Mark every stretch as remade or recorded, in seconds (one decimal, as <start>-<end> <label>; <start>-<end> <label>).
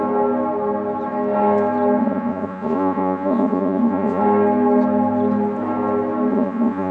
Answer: 0.0-2.0 recorded; 2.0-4.2 remade; 4.2-6.3 recorded; 6.3-6.9 remade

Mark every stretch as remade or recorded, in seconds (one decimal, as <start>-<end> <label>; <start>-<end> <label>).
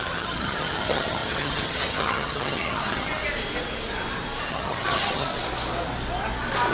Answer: 0.0-3.2 remade; 3.2-4.5 recorded; 4.5-5.3 remade; 5.3-6.7 recorded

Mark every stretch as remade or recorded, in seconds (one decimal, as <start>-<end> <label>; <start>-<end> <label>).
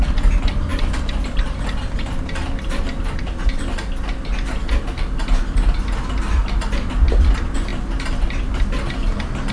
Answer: 0.0-9.5 recorded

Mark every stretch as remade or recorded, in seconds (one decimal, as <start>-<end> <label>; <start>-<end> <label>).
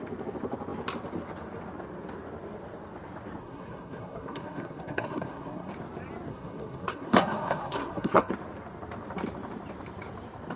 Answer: 0.0-3.4 recorded; 3.4-5.7 remade; 5.7-6.3 recorded; 6.3-8.3 remade; 8.3-10.6 recorded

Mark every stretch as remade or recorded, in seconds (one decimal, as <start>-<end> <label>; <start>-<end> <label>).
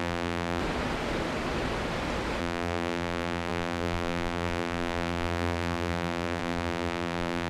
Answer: 0.0-0.6 remade; 0.6-2.4 recorded; 2.4-7.5 remade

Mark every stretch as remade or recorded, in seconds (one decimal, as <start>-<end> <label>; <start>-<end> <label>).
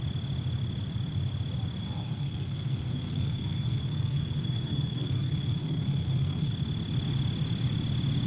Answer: 0.0-1.8 recorded; 1.8-6.5 remade; 6.5-8.3 recorded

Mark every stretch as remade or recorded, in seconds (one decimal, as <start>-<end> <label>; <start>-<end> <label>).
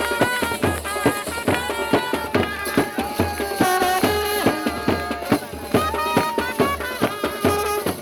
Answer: 0.0-8.0 recorded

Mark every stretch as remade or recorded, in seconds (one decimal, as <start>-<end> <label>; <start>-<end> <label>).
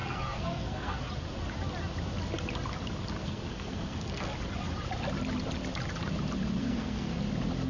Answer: 0.0-1.1 remade; 1.1-3.2 recorded; 3.2-4.3 remade; 4.3-6.6 recorded; 6.6-7.2 remade; 7.2-7.7 recorded